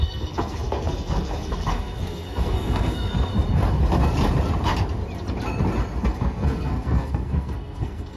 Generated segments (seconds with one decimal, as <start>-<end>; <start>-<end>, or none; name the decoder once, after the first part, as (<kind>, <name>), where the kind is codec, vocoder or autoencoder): 0.0-3.3 (codec, SNAC); 6.0-8.2